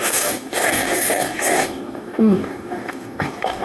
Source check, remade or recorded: remade